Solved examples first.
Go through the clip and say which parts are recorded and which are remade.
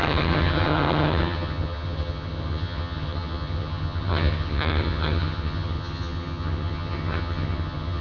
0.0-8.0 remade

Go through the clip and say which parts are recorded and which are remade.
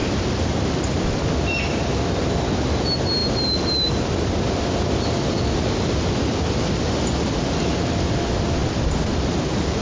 0.0-9.8 recorded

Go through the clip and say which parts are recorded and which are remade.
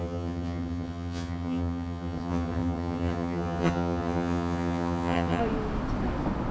0.0-5.4 remade; 5.4-6.5 recorded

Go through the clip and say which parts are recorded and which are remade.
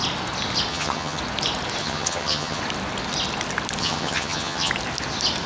0.0-0.7 recorded; 0.7-1.2 remade; 1.2-1.8 recorded; 1.8-2.6 remade; 2.6-3.8 recorded; 3.8-4.7 remade; 4.7-5.5 recorded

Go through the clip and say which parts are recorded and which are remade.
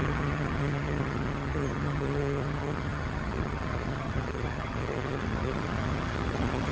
0.0-6.7 remade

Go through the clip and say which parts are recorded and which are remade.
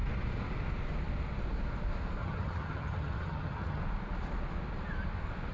0.0-2.2 recorded; 2.2-3.8 remade; 3.8-5.5 recorded